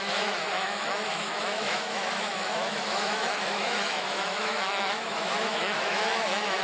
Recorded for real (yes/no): no